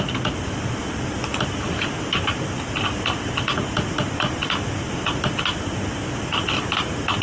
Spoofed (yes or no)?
no